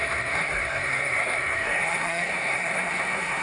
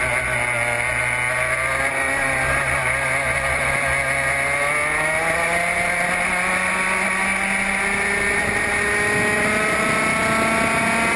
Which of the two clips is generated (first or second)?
first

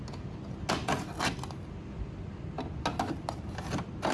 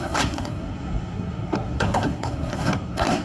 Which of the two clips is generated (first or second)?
second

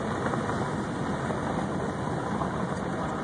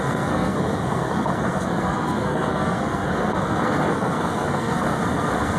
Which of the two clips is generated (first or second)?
second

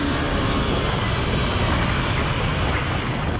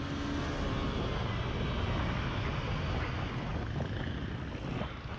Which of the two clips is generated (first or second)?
first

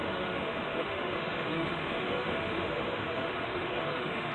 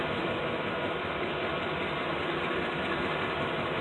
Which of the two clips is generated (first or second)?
first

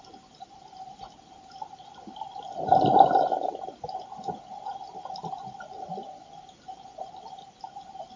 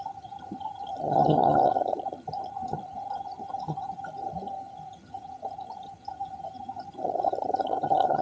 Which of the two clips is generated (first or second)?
second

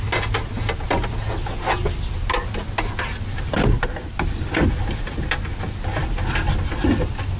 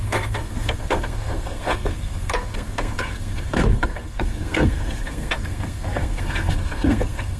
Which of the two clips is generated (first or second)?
second